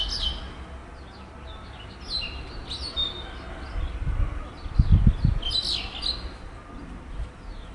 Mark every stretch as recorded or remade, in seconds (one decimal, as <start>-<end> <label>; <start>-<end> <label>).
0.0-7.7 recorded